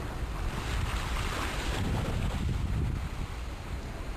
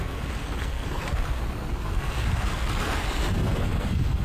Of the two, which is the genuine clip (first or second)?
first